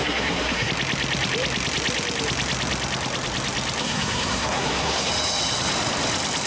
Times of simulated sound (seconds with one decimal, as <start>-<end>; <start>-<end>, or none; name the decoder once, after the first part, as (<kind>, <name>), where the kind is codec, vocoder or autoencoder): 0.0-0.7 (codec, SNAC); 3.8-5.1